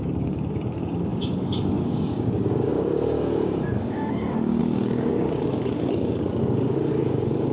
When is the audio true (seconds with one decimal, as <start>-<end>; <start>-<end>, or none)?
none